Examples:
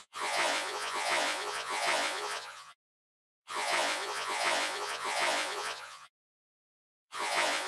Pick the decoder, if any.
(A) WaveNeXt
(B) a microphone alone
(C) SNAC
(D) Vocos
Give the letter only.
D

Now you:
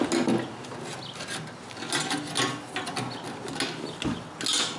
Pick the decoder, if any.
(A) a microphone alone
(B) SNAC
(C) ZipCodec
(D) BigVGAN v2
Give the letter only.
A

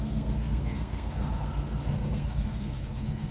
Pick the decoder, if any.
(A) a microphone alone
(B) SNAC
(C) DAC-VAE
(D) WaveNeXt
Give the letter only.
B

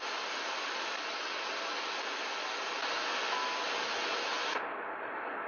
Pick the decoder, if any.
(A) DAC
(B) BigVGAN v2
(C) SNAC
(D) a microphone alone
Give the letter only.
D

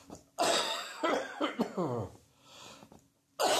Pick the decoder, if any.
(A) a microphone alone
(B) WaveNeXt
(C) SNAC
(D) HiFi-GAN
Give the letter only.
A